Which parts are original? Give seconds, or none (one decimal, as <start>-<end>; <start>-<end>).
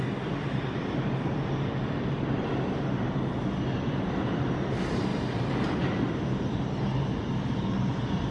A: 0.0-8.3